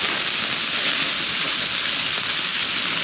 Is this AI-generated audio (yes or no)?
no